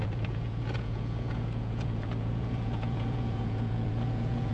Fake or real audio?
fake